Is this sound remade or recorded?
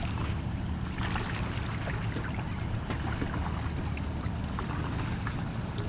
recorded